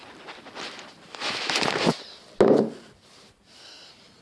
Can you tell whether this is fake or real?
real